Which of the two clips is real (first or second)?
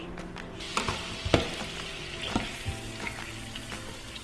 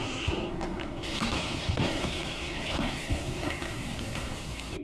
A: first